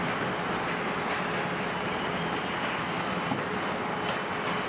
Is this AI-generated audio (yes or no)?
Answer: no